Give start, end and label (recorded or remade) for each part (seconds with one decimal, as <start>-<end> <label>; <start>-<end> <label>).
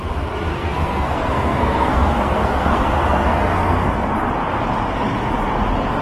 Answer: 0.0-0.5 recorded; 0.5-4.1 remade; 4.1-6.0 recorded